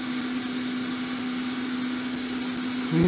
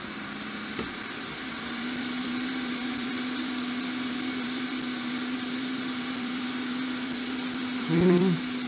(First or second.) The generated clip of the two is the second